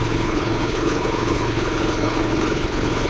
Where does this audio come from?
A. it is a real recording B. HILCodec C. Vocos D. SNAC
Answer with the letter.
B